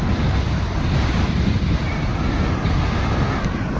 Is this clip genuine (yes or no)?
yes